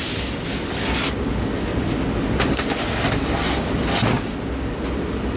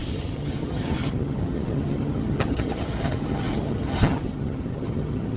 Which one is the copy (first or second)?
second